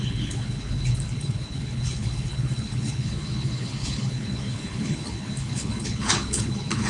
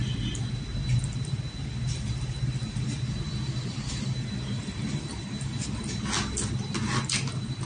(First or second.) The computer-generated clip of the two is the first